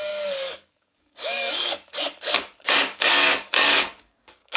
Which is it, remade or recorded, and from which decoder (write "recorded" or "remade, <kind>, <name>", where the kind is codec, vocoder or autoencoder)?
remade, codec, DAC